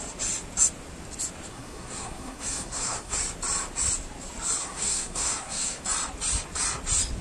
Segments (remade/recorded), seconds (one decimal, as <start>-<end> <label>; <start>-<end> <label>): 0.0-1.5 recorded; 1.5-3.2 remade; 3.2-4.6 recorded; 4.6-5.8 remade; 5.8-7.2 recorded